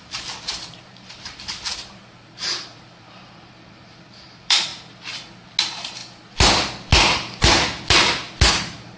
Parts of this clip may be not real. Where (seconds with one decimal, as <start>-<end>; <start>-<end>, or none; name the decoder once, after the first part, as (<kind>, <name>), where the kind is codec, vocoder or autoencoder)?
0.0-4.7 (vocoder, BigVGAN v2); 5.6-6.0; 8.5-9.0